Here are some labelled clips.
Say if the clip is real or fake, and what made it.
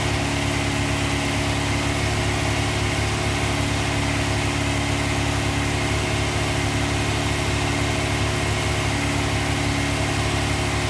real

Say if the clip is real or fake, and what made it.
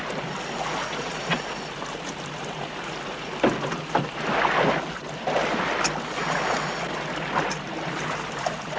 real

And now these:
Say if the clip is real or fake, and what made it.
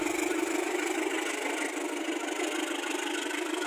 real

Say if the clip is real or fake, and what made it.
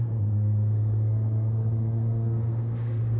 fake, codec, SNAC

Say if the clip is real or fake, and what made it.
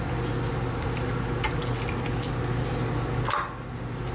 real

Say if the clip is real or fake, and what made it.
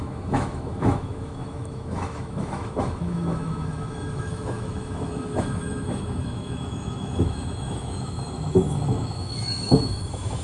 fake, autoencoder, DAC-VAE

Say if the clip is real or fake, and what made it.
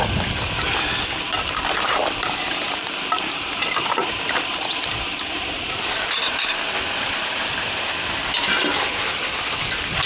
fake, vocoder, BigVGAN v2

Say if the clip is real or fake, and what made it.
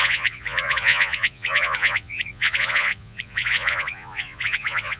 fake, vocoder, Vocos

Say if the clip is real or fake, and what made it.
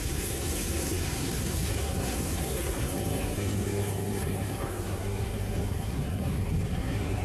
fake, codec, SNAC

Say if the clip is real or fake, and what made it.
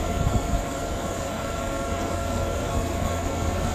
fake, codec, SNAC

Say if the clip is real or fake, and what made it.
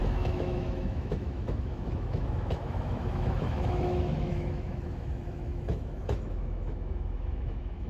fake, autoencoder, DAC-VAE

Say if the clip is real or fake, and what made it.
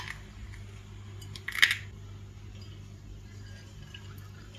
real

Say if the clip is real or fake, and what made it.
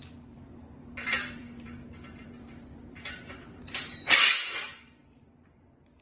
fake, vocoder, BigVGAN v2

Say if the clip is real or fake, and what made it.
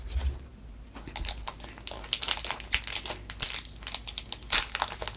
real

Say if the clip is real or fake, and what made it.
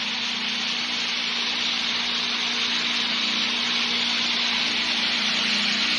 real